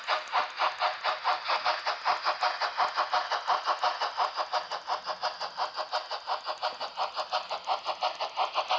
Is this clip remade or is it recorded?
recorded